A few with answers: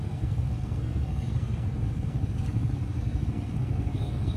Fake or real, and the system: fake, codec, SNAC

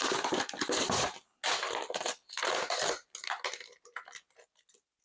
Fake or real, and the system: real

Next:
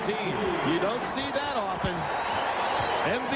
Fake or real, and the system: real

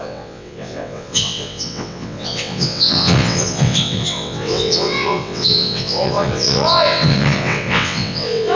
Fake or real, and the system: fake, vocoder, WaveNeXt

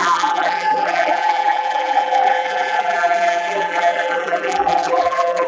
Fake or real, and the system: fake, vocoder, BigVGAN v2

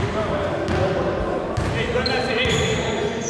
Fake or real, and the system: real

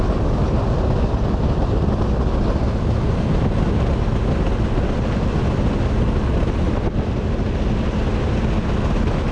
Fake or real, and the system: real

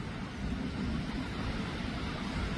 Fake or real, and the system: real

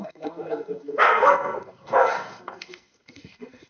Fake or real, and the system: fake, codec, SNAC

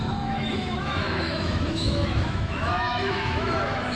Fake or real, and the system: fake, autoencoder, DAC-VAE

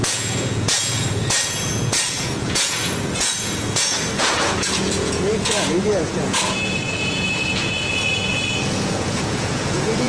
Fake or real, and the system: fake, vocoder, Vocos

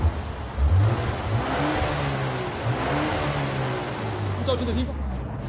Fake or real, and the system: real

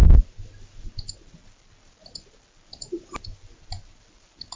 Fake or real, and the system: real